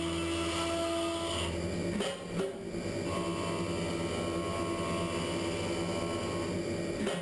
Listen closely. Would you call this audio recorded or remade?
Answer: recorded